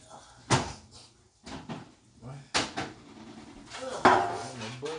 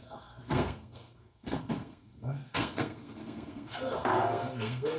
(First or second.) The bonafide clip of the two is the first